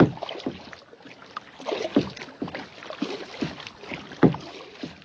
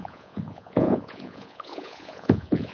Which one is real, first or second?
first